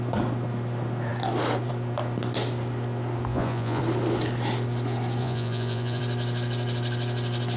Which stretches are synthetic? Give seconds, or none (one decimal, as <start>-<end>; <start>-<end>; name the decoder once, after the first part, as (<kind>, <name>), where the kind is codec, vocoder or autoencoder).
3.3-3.8 (vocoder, Vocos); 5.2-6.0

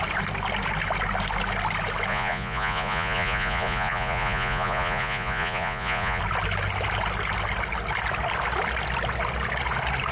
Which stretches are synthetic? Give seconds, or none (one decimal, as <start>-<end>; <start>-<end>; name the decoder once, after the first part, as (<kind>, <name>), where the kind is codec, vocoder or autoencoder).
2.1-6.2 (vocoder, Vocos)

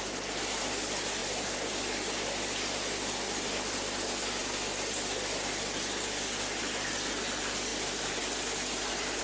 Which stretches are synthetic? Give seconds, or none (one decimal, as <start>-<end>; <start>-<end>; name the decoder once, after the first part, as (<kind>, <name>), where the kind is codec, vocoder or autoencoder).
none